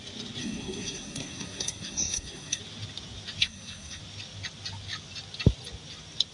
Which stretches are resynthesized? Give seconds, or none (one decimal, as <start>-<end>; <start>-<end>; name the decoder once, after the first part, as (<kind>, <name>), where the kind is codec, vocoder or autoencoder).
0.4-2.6 (codec, SNAC); 3.4-4.0